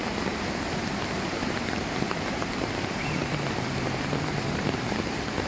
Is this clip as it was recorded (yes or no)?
yes